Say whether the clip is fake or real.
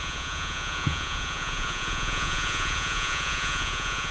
fake